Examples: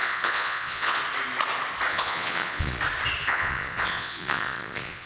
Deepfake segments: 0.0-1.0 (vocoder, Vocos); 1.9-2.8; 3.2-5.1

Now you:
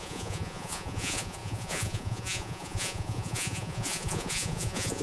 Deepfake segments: 0.0-5.0 (vocoder, Vocos)

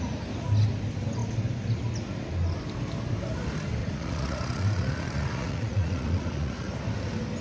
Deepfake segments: 3.8-6.7 (vocoder, Vocos)